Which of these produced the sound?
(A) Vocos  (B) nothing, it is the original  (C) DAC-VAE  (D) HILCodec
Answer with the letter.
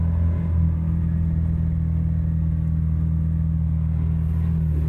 B